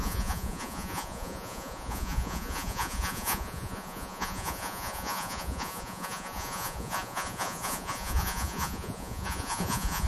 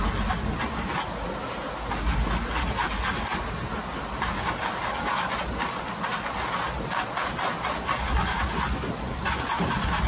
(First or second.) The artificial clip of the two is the first